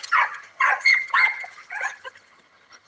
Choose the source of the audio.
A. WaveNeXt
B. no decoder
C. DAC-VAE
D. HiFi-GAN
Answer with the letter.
D